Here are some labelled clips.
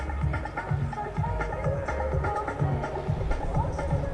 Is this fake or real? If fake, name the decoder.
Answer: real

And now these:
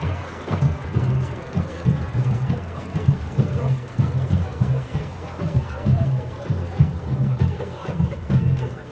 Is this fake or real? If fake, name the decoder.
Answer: fake, codec, SNAC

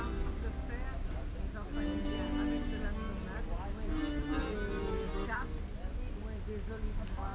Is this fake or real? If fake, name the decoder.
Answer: real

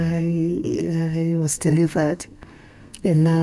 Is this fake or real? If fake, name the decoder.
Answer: fake, codec, SNAC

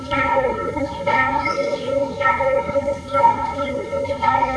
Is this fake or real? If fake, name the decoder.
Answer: fake, codec, SNAC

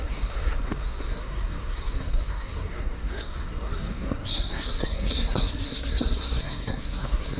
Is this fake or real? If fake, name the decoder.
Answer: fake, codec, SNAC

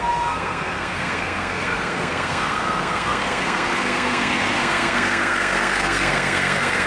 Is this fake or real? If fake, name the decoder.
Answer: fake, codec, SNAC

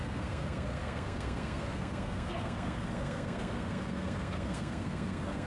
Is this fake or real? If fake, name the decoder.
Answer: fake, codec, SNAC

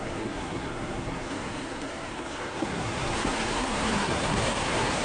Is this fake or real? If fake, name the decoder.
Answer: fake, codec, SNAC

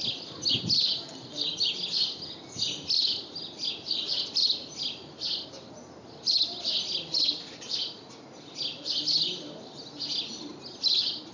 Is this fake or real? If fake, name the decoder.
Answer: real